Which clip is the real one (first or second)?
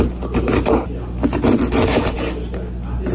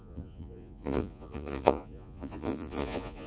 first